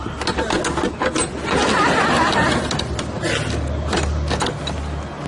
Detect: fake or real real